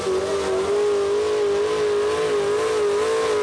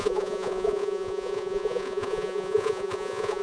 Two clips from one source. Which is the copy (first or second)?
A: second